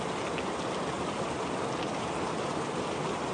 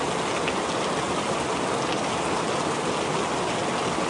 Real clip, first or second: second